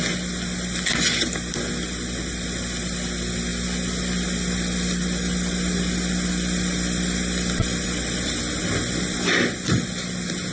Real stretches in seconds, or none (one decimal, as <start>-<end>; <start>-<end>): 0.0-10.5